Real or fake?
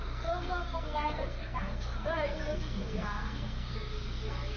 fake